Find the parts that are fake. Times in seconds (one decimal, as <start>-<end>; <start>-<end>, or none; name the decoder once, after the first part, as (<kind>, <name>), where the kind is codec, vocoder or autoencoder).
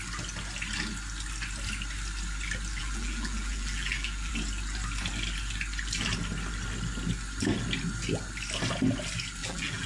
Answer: 2.8-4.3 (vocoder, BigVGAN v2); 9.4-9.9